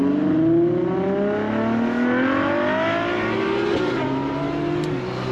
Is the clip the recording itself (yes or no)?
yes